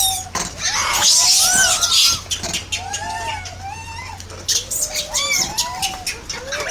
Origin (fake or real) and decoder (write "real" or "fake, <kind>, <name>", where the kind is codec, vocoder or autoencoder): real